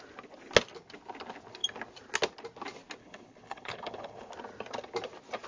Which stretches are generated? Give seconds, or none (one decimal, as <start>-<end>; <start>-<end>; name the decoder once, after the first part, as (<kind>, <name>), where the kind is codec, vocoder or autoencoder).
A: 3.0-4.3 (codec, HILCodec)